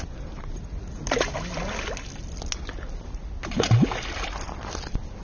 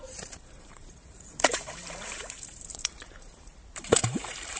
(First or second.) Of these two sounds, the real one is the first